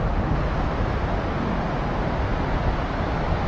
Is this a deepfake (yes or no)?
no